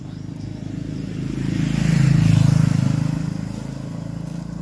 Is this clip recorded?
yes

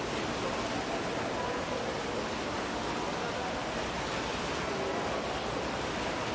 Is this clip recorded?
yes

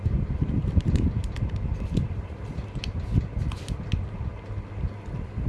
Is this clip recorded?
yes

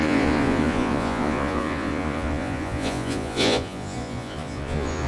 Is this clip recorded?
no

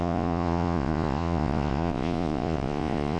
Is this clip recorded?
no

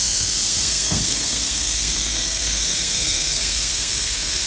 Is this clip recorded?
no